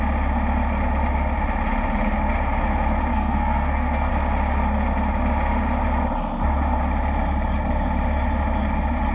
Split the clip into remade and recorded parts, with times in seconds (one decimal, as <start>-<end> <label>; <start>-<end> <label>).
0.0-3.1 recorded; 3.1-4.1 remade; 4.1-9.1 recorded